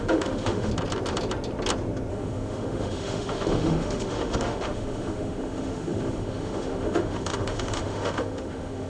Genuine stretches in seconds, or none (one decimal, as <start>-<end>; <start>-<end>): 0.7-2.1